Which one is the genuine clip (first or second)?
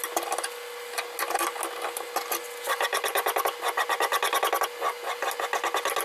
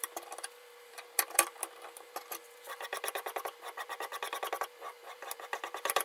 first